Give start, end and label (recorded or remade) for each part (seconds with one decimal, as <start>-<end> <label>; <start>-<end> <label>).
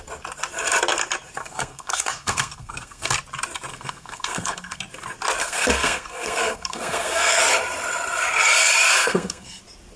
0.0-1.4 recorded; 1.4-3.1 remade; 3.1-3.7 recorded; 3.7-4.8 remade; 4.8-5.4 recorded; 5.4-7.4 remade; 7.4-9.0 recorded; 9.0-9.6 remade; 9.6-10.0 recorded